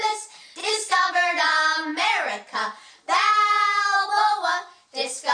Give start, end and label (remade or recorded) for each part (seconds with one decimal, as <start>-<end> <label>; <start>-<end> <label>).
0.0-0.6 recorded; 0.6-1.1 remade; 1.1-5.3 recorded